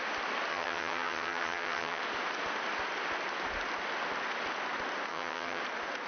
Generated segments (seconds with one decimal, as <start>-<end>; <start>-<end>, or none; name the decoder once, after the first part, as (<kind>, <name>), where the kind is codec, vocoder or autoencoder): 0.5-2.0 (vocoder, HiFi-GAN); 5.1-5.6